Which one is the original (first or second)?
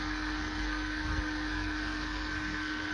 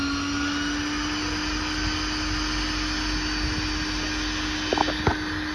second